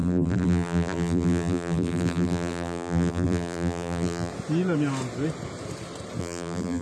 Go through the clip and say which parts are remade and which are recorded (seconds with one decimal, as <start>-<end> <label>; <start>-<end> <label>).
0.0-4.3 remade; 4.3-6.2 recorded; 6.2-6.8 remade

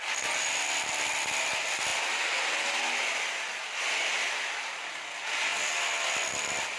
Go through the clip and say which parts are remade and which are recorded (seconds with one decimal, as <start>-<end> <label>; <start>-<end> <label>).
0.0-6.8 recorded

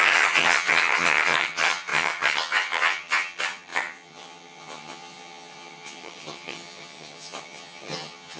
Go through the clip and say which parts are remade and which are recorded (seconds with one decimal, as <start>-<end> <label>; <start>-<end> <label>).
0.0-8.4 remade

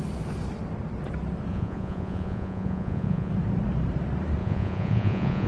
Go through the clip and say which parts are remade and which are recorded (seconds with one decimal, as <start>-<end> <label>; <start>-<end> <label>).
0.0-1.5 recorded; 1.5-3.3 remade; 3.3-4.4 recorded; 4.4-5.5 remade